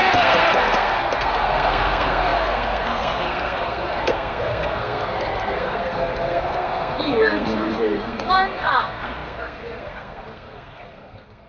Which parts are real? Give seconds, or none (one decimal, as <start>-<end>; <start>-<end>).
none

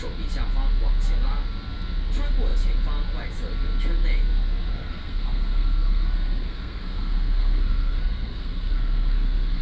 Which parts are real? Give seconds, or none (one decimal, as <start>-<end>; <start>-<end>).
0.0-4.7

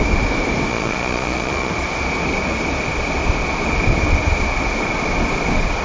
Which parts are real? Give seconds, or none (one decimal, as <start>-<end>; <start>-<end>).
0.0-0.7; 1.7-5.8

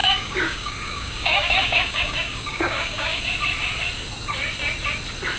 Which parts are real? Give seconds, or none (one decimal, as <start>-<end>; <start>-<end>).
3.2-5.4